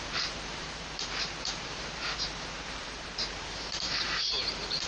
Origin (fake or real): fake